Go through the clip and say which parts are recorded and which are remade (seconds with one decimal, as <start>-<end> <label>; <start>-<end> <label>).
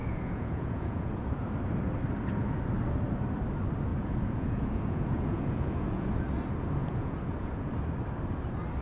0.0-1.5 remade; 1.5-3.9 recorded; 3.9-6.1 remade; 6.1-6.8 recorded; 6.8-7.7 remade; 7.7-8.8 recorded